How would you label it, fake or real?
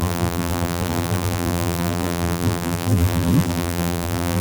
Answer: fake